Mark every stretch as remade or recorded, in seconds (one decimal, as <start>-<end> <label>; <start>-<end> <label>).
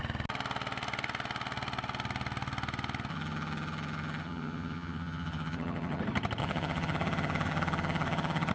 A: 0.0-3.1 recorded; 3.1-6.0 remade; 6.0-6.4 recorded; 6.4-8.5 remade